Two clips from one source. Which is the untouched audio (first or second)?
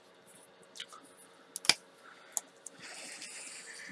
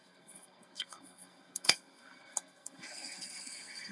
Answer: first